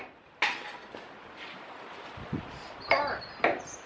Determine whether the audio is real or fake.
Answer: real